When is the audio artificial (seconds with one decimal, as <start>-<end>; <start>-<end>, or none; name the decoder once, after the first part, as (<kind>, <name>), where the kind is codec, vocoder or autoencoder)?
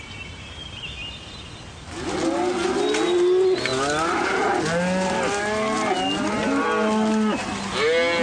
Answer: none